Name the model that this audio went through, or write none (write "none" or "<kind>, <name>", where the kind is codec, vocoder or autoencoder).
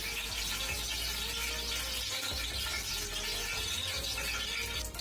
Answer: none